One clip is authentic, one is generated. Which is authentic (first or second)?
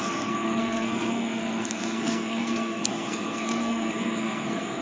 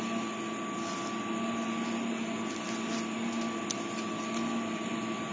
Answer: second